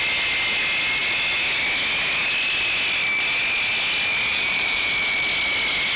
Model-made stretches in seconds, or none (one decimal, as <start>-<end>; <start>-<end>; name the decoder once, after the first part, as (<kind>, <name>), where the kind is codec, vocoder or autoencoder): 4.3-4.9 (vocoder, BigVGAN v2)